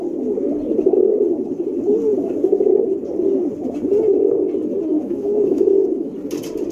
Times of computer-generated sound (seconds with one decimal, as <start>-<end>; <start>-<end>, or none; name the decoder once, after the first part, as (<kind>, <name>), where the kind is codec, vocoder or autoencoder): 4.9-6.1 (autoencoder, DAC-VAE)